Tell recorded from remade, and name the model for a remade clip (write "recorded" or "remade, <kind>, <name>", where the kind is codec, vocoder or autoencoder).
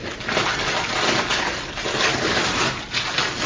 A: recorded